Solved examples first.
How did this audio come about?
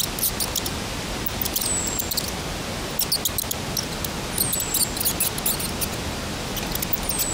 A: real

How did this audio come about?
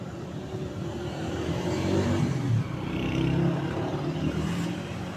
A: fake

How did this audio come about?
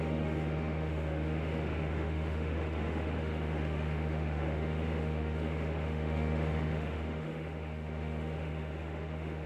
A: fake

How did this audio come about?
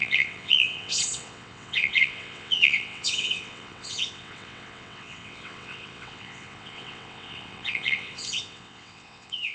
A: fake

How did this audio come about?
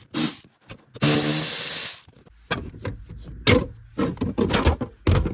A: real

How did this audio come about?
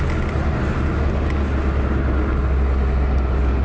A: real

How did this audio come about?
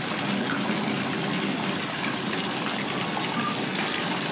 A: real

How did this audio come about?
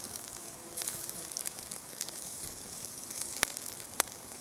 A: fake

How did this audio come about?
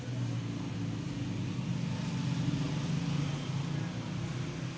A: real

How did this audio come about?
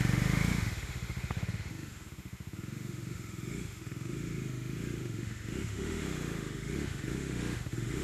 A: fake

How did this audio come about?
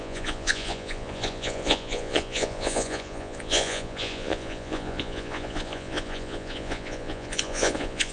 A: fake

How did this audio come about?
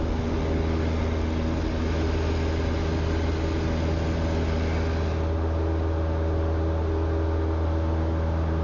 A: real